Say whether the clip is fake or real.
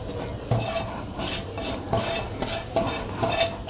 real